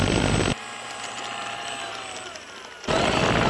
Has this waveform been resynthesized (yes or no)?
yes